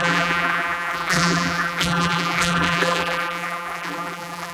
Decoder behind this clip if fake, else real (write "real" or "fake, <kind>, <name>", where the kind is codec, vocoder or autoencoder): fake, vocoder, BigVGAN v2